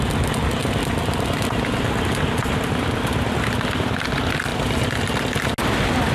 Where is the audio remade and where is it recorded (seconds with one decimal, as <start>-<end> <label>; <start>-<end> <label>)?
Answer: 0.0-6.1 recorded